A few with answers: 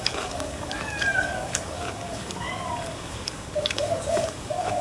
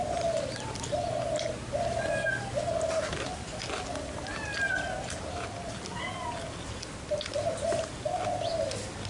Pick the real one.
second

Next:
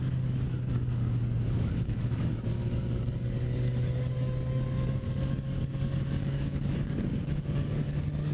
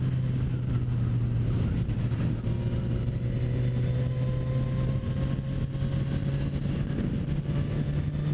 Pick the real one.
second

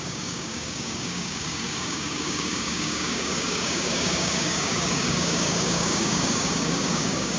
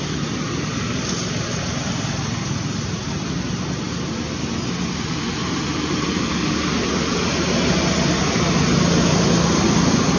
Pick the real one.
second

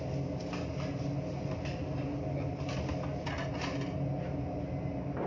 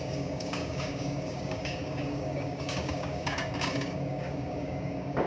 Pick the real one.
first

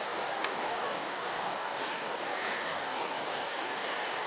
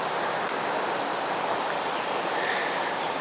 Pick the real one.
second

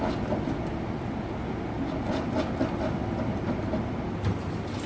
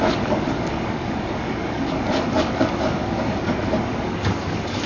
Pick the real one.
first